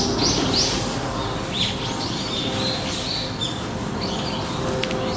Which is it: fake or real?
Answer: real